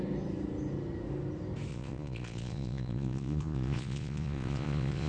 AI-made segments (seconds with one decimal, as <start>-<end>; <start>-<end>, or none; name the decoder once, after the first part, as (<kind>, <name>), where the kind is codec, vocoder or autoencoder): 1.7-5.1 (vocoder, Vocos)